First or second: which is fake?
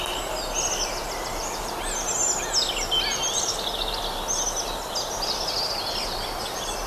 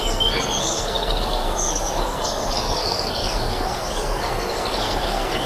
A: second